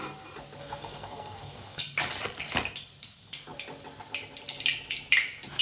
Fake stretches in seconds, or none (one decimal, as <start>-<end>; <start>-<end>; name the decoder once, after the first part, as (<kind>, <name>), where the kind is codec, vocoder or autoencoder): 0.6-1.8 (codec, SNAC)

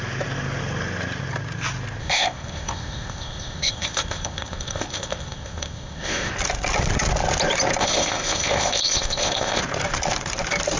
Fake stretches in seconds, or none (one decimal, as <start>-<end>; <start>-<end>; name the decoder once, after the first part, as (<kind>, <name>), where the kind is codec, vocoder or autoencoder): 2.0-6.3 (codec, ZipCodec); 7.8-9.6

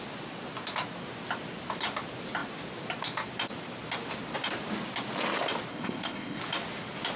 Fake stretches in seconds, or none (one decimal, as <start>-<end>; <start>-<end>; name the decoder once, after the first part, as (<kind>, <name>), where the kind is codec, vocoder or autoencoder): 5.7-6.4 (codec, ZipCodec)

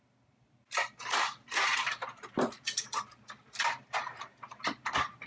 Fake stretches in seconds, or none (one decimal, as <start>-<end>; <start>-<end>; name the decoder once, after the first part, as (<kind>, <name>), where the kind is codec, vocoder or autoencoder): none